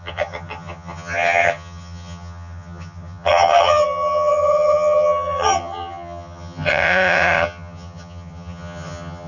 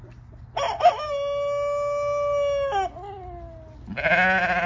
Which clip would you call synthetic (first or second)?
first